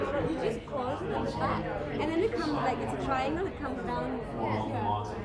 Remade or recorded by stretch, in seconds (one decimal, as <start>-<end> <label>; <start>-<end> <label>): 0.0-5.2 recorded